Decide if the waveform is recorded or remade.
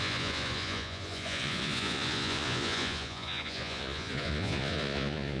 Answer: remade